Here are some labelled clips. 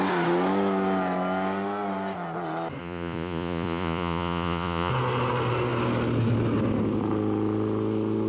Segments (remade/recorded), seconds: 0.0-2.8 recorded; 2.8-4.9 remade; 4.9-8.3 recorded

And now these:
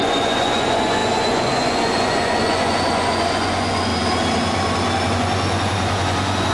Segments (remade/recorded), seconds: 0.0-3.9 remade; 3.9-5.1 recorded; 5.1-6.5 remade

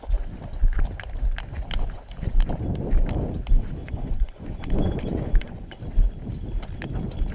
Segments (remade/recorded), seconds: 0.0-3.8 recorded; 3.8-5.8 remade; 5.8-7.3 recorded

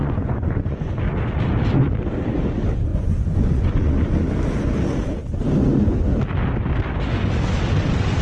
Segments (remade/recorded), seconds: 0.0-1.0 remade; 1.0-2.9 recorded; 2.9-4.3 remade; 4.3-8.2 recorded